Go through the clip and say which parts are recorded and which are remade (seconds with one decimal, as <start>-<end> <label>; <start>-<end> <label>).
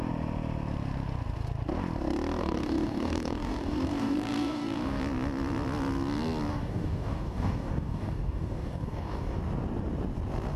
0.0-2.4 recorded; 2.4-5.0 remade; 5.0-6.5 recorded; 6.5-9.4 remade; 9.4-10.6 recorded